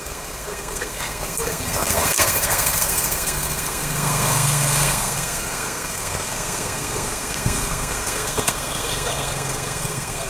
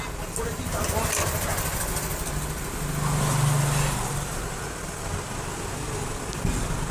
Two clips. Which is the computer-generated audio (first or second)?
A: first